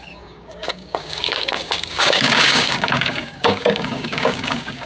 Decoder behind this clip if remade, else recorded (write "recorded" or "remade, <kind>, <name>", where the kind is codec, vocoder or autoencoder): remade, codec, DAC